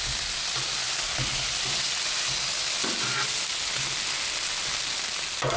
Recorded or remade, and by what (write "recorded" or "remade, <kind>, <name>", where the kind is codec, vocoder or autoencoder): recorded